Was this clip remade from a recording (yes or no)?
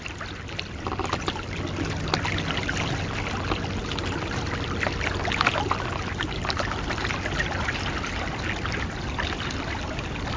no